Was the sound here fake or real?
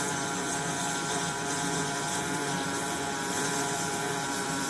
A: fake